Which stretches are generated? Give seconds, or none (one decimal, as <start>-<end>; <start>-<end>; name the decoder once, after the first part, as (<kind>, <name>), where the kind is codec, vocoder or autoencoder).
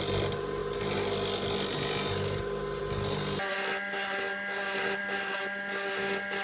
none